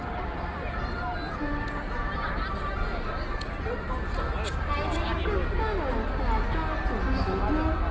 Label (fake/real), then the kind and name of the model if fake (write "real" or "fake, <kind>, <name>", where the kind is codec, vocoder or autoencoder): real